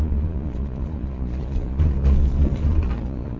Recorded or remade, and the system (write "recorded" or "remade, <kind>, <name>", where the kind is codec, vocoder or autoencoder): remade, vocoder, Vocos